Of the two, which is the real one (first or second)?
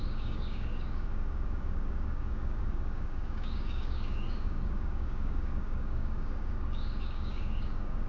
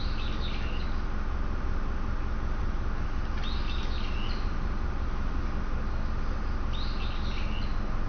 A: second